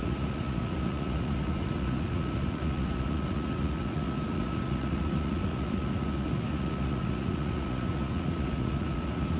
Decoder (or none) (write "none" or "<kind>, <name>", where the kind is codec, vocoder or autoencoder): vocoder, Vocos